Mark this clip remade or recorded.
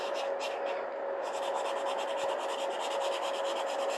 recorded